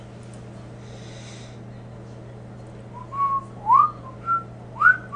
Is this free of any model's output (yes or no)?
yes